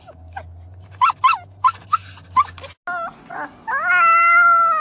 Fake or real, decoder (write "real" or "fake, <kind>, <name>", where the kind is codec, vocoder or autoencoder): real